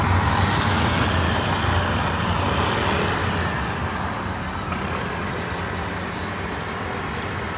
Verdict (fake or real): real